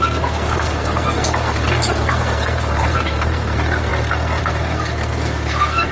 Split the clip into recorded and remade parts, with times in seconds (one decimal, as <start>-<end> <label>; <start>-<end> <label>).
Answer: 0.0-5.9 remade